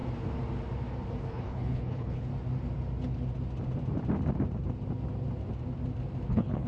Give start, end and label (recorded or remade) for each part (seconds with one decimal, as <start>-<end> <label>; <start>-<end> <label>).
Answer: 0.0-1.2 recorded; 1.2-2.3 remade; 2.3-6.3 recorded; 6.3-6.7 remade

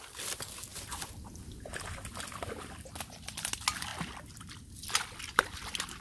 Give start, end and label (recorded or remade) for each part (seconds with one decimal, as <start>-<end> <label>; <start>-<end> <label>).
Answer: 0.0-6.0 recorded

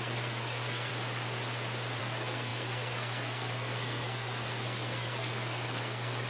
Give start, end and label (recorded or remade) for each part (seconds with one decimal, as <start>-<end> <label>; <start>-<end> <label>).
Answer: 0.0-0.9 remade; 0.9-2.0 recorded; 2.0-6.3 remade